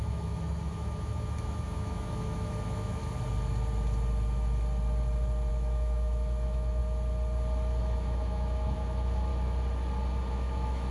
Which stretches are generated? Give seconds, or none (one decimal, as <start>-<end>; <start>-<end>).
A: 0.0-3.0; 5.5-6.8; 7.8-9.3; 10.3-10.9